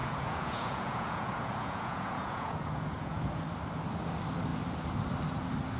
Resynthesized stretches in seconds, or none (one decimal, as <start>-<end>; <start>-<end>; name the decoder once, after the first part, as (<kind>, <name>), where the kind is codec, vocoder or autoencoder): 0.0-3.4 (vocoder, Vocos)